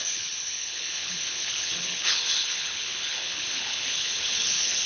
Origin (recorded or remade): remade